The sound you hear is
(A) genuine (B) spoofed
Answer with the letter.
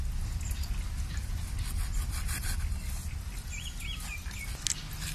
A